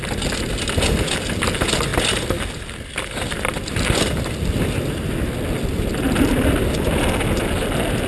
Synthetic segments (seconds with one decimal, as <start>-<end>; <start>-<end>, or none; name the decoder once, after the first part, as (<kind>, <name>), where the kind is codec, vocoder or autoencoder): none